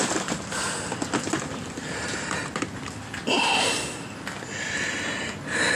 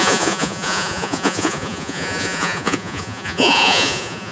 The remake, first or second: second